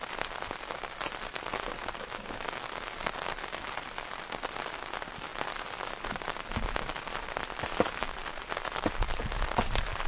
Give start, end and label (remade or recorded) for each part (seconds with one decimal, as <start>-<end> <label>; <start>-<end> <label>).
0.0-10.1 recorded